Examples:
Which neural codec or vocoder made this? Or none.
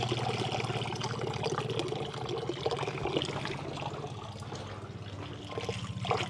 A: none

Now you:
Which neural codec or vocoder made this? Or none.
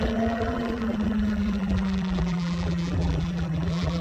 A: vocoder, BigVGAN v2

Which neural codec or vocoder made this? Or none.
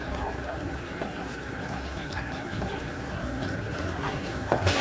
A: codec, SNAC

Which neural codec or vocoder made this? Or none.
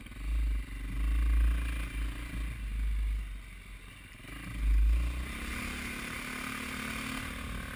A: none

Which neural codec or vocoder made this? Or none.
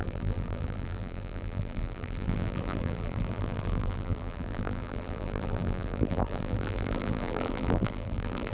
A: vocoder, BigVGAN v2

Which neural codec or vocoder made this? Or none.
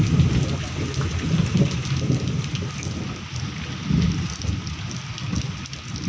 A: none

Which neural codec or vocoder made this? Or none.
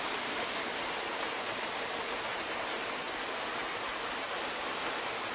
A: none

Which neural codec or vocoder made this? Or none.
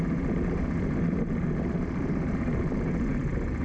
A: none